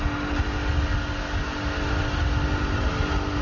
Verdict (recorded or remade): recorded